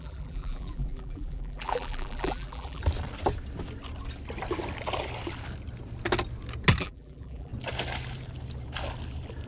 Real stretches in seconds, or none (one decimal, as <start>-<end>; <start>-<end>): 2.8-6.8; 7.5-9.5